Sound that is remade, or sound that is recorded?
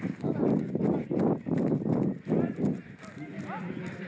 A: recorded